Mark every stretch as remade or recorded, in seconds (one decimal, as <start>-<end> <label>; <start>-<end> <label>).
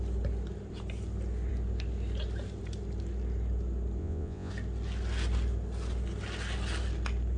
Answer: 0.0-4.0 recorded; 4.0-4.5 remade; 4.5-7.4 recorded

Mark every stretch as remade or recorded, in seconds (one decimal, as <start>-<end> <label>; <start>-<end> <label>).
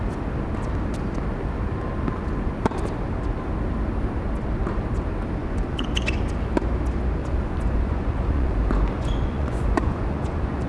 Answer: 0.0-5.4 recorded; 5.4-6.2 remade; 6.2-7.2 recorded; 7.2-10.7 remade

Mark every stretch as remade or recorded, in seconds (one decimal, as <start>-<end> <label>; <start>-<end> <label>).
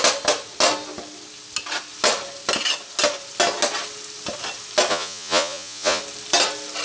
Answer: 0.0-4.9 recorded; 4.9-6.0 remade; 6.0-6.8 recorded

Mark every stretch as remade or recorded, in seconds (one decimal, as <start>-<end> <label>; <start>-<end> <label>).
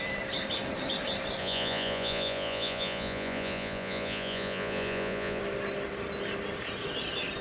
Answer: 0.0-1.4 recorded; 1.4-5.4 remade; 5.4-7.4 recorded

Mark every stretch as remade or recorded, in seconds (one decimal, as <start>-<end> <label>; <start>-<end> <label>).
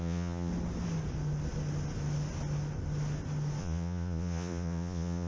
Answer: 0.0-0.5 remade; 0.5-3.6 recorded; 3.6-5.3 remade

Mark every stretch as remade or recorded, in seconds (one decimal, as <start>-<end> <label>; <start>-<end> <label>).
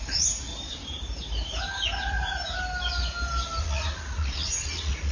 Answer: 0.0-0.5 remade; 0.5-3.6 recorded; 3.6-5.1 remade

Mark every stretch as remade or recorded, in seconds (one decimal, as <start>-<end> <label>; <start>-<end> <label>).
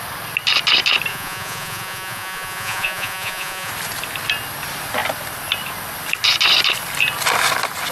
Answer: 0.0-1.1 recorded; 1.1-3.7 remade; 3.7-7.9 recorded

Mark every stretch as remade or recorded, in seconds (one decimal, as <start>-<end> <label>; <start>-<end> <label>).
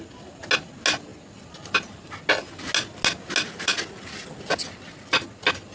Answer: 0.0-5.7 recorded